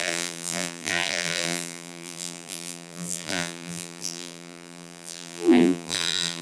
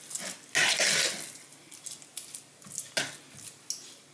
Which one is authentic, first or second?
second